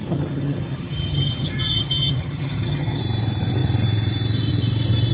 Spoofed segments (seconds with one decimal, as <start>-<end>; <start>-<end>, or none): 0.0-3.0